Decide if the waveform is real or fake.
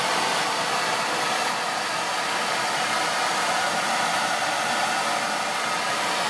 fake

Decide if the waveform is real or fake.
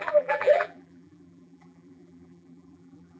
fake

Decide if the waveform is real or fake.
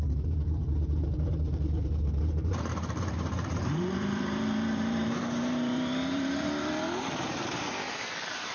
fake